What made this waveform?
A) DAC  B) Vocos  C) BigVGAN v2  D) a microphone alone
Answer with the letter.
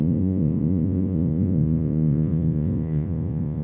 B